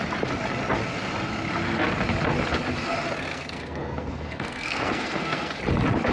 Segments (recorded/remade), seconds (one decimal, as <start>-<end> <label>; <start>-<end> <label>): 0.0-3.3 recorded; 3.3-5.6 remade; 5.6-6.1 recorded